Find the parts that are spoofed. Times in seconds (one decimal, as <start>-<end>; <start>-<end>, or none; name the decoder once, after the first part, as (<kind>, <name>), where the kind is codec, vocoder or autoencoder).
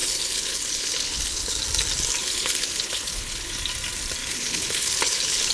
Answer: 0.0-1.6 (codec, HILCodec); 2.2-3.5; 4.2-5.5